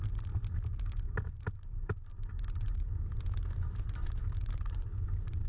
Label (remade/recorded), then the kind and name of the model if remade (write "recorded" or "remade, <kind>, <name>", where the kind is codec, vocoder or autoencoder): recorded